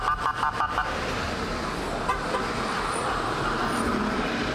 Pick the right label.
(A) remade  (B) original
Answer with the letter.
A